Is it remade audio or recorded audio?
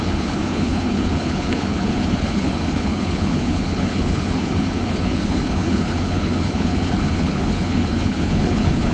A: remade